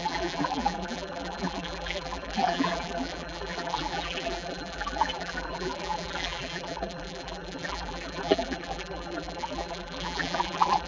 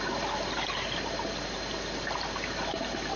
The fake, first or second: first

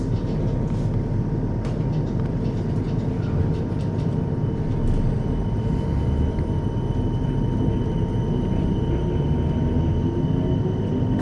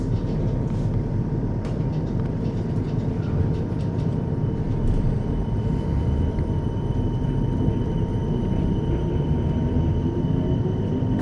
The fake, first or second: second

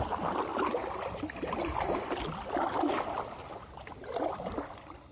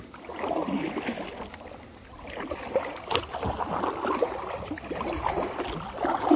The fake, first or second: first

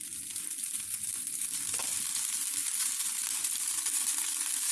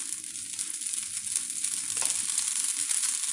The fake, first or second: first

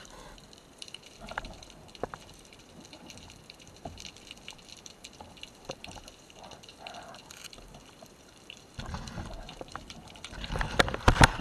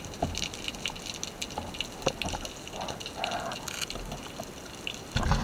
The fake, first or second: first